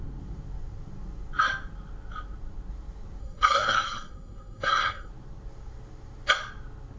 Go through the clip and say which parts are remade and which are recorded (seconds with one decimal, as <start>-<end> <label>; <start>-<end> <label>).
0.0-3.2 recorded; 3.2-5.1 remade; 5.1-7.0 recorded